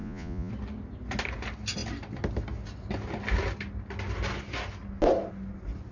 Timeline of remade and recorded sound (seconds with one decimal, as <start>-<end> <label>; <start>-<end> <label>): 0.0-0.5 remade; 0.5-5.9 recorded